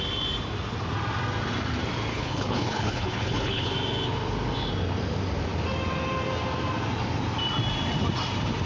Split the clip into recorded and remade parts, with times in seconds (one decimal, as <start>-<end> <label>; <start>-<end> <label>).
0.0-2.1 recorded; 2.1-3.7 remade; 3.7-8.7 recorded